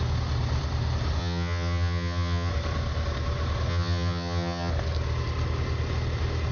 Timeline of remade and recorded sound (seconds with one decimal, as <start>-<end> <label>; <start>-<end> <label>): 0.0-1.2 recorded; 1.2-2.5 remade; 2.5-3.7 recorded; 3.7-4.7 remade; 4.7-6.5 recorded